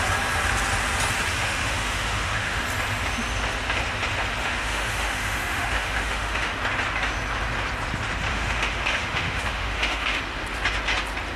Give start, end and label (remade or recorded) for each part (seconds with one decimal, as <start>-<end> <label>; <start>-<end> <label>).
0.0-1.3 recorded; 1.3-2.6 remade; 2.6-4.4 recorded; 4.4-6.6 remade; 6.6-8.3 recorded; 8.3-10.2 remade; 10.2-11.4 recorded